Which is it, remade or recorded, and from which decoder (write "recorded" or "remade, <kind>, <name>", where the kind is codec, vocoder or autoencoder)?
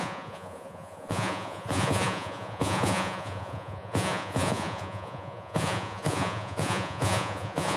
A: remade, vocoder, Vocos